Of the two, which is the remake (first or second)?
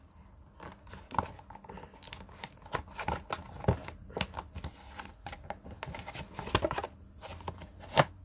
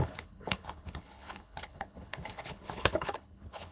second